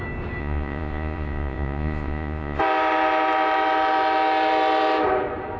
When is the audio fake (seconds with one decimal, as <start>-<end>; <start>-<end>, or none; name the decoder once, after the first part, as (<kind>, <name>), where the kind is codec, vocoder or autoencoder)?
0.4-2.6 (vocoder, Vocos)

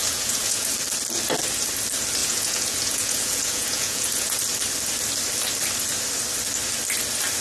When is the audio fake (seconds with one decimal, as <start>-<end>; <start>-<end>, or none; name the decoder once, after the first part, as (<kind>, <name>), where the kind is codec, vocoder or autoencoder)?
0.0-0.7 (vocoder, Vocos); 2.2-4.4